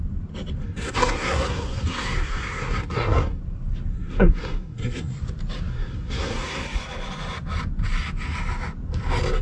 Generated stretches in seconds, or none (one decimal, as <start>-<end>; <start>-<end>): 0.6-3.4; 3.9-5.2; 5.7-6.8

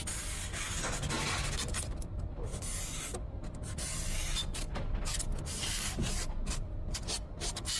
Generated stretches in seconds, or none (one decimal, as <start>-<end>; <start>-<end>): none

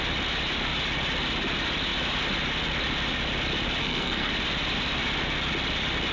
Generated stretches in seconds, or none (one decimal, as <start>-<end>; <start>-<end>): 3.8-4.3

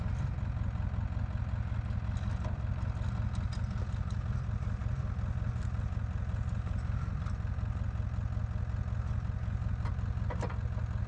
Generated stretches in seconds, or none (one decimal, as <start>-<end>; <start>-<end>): none

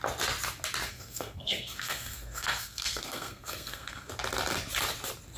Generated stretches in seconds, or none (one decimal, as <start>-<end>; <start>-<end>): 0.9-4.1